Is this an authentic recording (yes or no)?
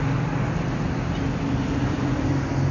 yes